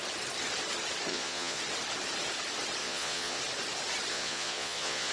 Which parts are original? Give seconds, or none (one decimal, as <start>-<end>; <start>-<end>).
0.0-1.1; 1.6-2.8; 3.4-4.1

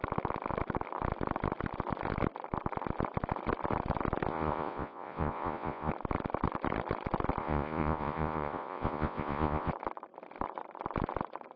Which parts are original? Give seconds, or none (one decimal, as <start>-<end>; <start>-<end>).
0.0-4.3; 5.9-7.4; 9.7-11.6

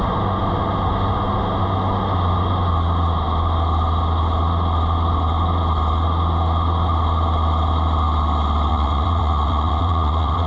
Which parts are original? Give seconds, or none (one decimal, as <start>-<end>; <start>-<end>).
0.0-8.7

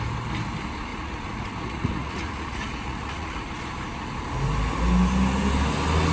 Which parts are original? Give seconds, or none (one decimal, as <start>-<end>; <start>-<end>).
0.0-0.9; 3.5-6.1

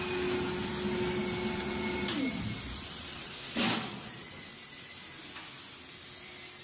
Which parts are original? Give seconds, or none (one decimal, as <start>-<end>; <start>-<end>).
0.0-6.6